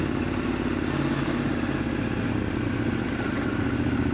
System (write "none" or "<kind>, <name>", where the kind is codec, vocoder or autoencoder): none